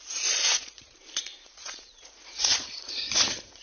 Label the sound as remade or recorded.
remade